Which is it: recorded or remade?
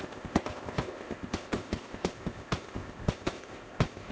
remade